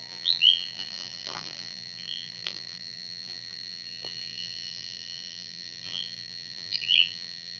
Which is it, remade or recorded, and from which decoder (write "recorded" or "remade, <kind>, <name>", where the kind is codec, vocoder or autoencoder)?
remade, vocoder, BigVGAN v2